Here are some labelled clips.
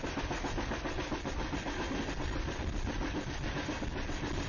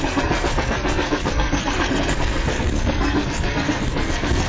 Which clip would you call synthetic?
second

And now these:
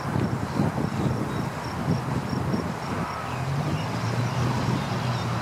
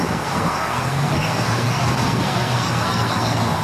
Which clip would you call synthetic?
second